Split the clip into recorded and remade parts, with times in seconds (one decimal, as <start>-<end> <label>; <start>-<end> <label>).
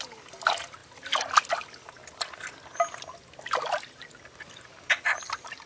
0.0-5.7 recorded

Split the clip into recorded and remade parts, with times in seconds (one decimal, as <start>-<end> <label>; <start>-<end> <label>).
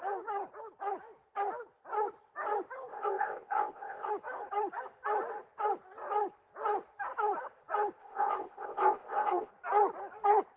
0.0-2.9 recorded; 2.9-4.1 remade; 4.1-8.0 recorded; 8.0-9.5 remade; 9.5-10.6 recorded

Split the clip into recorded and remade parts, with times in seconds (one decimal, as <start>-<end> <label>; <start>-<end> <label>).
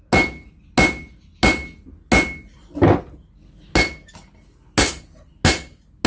0.0-6.1 recorded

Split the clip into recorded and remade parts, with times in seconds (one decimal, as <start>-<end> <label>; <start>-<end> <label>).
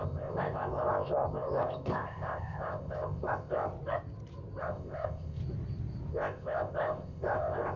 0.0-3.7 remade; 3.7-4.6 recorded; 4.6-5.4 remade; 5.4-6.1 recorded; 6.1-7.8 remade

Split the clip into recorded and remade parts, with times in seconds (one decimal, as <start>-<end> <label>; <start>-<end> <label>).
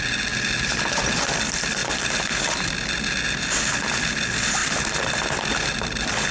0.0-6.3 recorded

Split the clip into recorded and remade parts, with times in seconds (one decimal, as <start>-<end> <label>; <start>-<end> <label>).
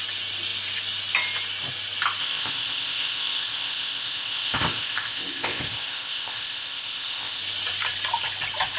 0.0-2.2 recorded; 2.2-7.4 remade; 7.4-8.8 recorded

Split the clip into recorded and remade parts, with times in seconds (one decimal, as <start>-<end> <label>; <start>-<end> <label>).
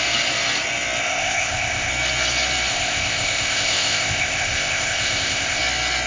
0.0-1.0 recorded; 1.0-1.9 remade; 1.9-2.7 recorded; 2.7-5.6 remade; 5.6-6.1 recorded